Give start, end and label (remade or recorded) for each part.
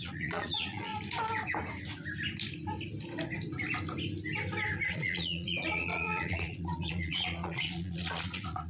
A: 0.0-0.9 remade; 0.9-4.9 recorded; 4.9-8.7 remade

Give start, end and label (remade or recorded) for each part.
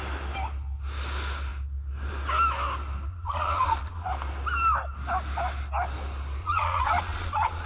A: 0.0-3.1 recorded; 3.1-4.1 remade; 4.1-6.4 recorded; 6.4-7.7 remade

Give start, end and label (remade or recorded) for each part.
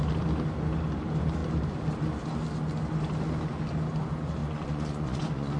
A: 0.0-4.4 recorded; 4.4-5.6 remade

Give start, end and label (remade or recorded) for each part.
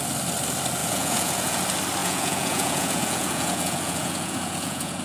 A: 0.0-0.8 recorded; 0.8-1.6 remade; 1.6-2.0 recorded; 2.0-5.0 remade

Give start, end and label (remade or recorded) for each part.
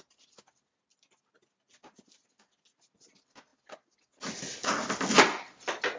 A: 0.0-6.0 recorded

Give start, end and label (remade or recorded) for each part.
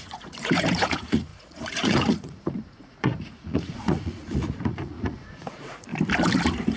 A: 0.0-5.9 remade; 5.9-6.8 recorded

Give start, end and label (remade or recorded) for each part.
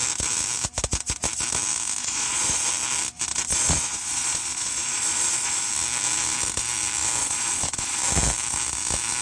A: 0.0-2.0 recorded; 2.0-2.7 remade; 2.7-3.5 recorded; 3.5-5.7 remade; 5.7-7.2 recorded; 7.2-8.0 remade; 8.0-9.2 recorded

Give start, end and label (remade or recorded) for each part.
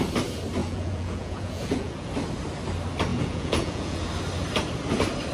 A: 0.0-0.6 recorded; 0.6-2.1 remade; 2.1-3.1 recorded; 3.1-4.0 remade; 4.0-5.3 recorded